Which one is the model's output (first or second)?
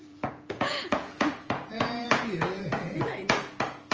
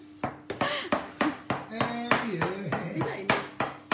first